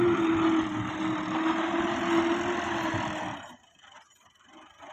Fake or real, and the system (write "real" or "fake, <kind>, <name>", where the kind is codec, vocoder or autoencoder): real